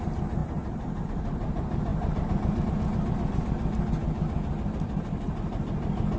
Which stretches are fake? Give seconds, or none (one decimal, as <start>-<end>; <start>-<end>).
0.4-1.0; 1.9-2.6